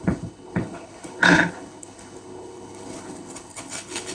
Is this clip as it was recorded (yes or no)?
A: no